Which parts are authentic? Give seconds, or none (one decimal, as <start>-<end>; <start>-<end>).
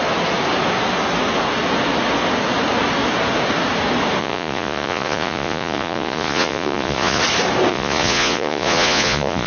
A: 0.0-4.2; 7.2-7.7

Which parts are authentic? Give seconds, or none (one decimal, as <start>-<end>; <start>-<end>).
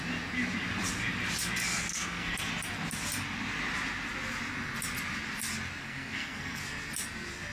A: 0.0-1.9; 2.5-5.8; 6.6-7.5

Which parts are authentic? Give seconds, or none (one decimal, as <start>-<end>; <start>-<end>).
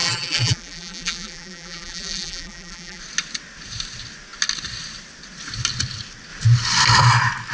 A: 3.0-7.5